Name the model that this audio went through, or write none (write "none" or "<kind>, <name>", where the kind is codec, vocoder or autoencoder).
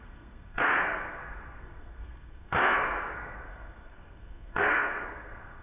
codec, SNAC